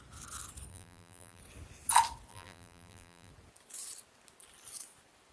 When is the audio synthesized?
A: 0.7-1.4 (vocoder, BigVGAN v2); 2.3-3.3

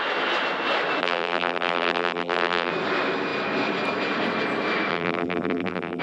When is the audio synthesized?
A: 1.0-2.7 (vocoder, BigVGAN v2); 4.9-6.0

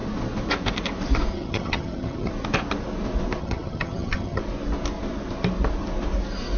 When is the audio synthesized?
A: 1.3-2.3 (vocoder, HiFi-GAN); 3.4-4.4

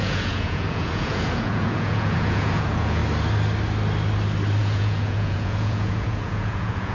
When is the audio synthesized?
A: 0.0-3.0 (vocoder, Vocos); 4.6-6.9

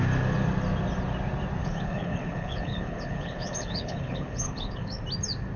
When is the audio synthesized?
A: 1.6-5.0 (codec, HILCodec)

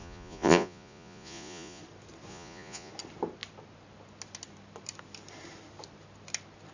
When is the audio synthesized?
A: 0.0-1.8 (vocoder, Vocos); 2.3-2.9

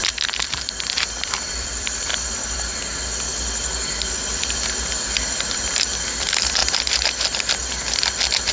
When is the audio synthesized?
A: 0.0-2.1 (vocoder, BigVGAN v2); 4.1-6.6